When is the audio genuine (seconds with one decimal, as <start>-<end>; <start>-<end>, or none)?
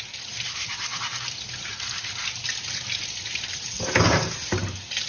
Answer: 0.0-5.1